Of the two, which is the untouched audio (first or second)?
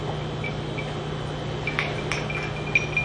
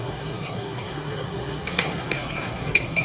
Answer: first